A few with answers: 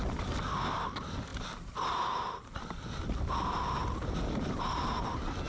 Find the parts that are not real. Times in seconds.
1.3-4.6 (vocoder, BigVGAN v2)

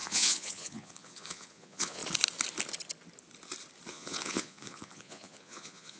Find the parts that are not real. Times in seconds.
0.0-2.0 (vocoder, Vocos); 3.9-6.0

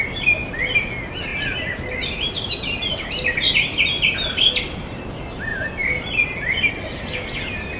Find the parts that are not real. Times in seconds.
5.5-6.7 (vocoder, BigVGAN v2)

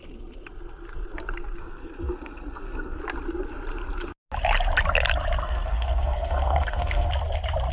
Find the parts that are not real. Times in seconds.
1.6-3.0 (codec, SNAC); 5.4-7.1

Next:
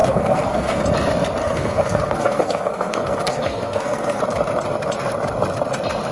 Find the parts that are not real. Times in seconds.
0.0-0.8 (codec, SNAC); 1.4-4.2

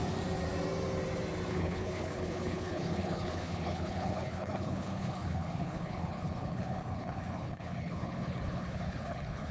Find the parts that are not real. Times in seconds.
1.5-9.5 (codec, HILCodec)

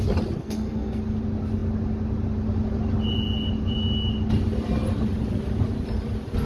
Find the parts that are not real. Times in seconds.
0.4-1.0 (codec, SNAC)